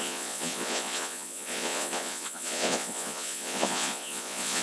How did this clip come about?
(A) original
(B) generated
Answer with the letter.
B